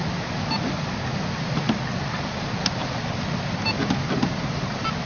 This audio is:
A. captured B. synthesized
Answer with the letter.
A